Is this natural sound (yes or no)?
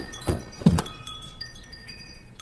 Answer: no